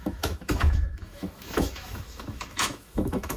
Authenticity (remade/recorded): remade